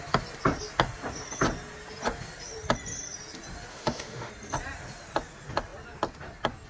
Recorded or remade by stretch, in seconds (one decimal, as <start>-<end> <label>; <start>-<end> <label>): 0.0-3.7 recorded; 3.7-4.3 remade; 4.3-6.7 recorded